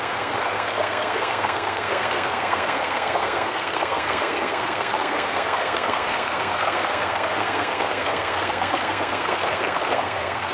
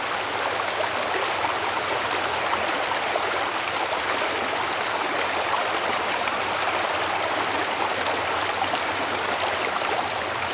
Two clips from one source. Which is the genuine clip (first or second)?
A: second